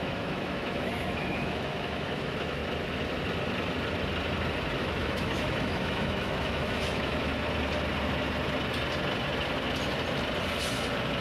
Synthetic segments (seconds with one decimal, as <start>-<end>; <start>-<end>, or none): 0.0-2.6; 4.8-7.3